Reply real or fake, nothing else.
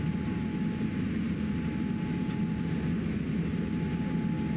real